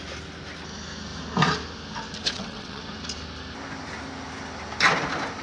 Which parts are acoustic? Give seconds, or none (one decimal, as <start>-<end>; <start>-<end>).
0.0-2.2; 2.8-5.4